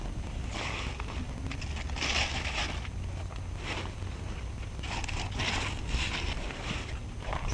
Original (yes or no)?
yes